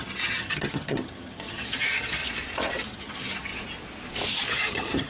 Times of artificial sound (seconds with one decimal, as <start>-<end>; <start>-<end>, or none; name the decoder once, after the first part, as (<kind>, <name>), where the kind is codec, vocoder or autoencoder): 0.0-2.2 (vocoder, HiFi-GAN); 2.9-3.5; 4.3-5.1